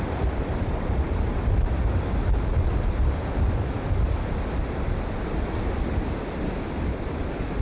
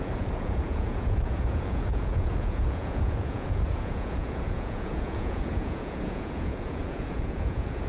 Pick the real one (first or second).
first